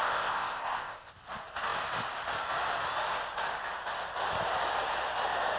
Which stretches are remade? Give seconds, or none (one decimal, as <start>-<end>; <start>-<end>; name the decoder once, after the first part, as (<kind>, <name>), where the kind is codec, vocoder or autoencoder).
0.0-1.1 (codec, ZipCodec)